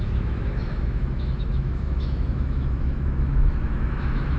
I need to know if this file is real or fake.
fake